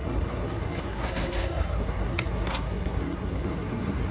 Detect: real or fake fake